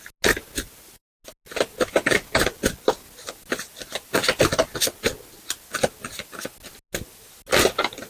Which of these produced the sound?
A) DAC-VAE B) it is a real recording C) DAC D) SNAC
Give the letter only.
B